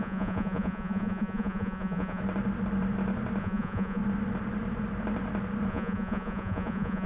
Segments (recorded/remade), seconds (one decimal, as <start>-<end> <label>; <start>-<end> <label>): 0.0-2.2 remade; 2.2-3.4 recorded; 3.4-4.0 remade; 4.0-5.7 recorded; 5.7-7.1 remade